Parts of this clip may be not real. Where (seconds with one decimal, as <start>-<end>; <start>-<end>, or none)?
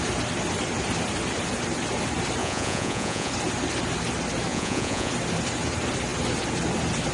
2.4-3.3; 4.5-5.1